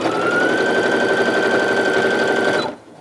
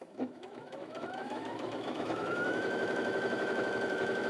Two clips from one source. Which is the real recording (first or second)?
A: first